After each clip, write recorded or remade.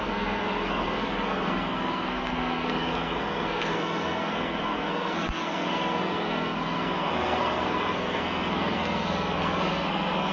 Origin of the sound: remade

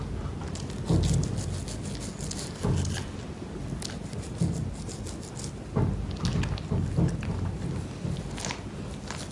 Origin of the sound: recorded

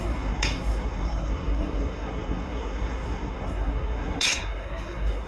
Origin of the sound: remade